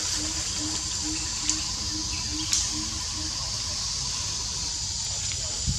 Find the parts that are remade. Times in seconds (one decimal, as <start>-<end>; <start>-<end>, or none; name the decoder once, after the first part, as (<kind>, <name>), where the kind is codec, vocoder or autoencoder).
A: 2.3-5.8 (vocoder, BigVGAN v2)